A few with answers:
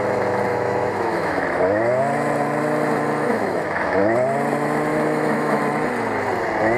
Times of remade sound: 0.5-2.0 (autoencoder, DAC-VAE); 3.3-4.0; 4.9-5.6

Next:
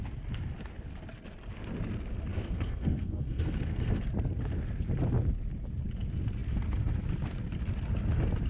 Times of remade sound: 2.3-4.0 (codec, SNAC)

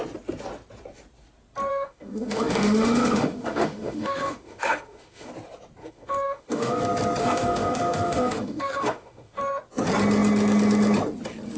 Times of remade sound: 1.7-5.3 (autoencoder, DAC-VAE); 5.8-6.8; 7.2-9.4

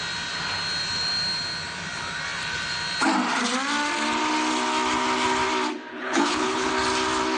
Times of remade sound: 5.9-6.7 (codec, HILCodec)

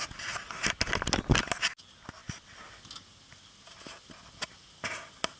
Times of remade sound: none